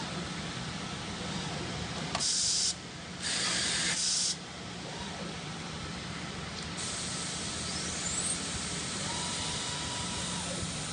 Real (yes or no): yes